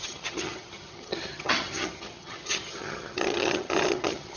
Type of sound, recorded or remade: remade